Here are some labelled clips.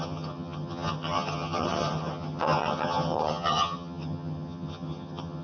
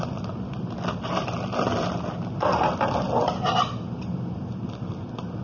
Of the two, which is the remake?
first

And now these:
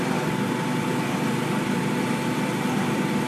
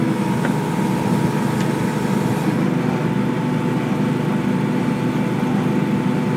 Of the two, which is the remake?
first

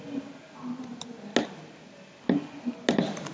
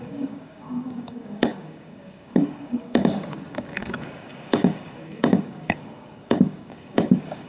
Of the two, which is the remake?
second